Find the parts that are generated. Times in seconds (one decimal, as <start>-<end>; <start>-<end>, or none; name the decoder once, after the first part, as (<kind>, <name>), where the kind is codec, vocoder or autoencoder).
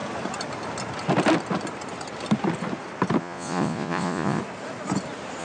3.2-4.4 (vocoder, Vocos)